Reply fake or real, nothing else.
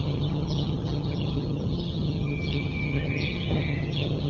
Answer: fake